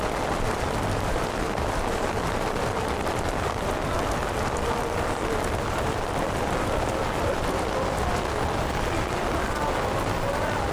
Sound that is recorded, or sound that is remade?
recorded